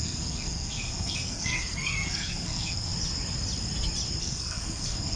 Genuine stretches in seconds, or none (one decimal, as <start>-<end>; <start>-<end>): 2.9-4.2